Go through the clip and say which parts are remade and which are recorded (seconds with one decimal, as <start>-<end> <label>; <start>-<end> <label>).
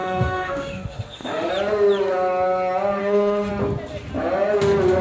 0.0-1.5 remade; 1.5-3.0 recorded; 3.0-3.5 remade; 3.5-5.0 recorded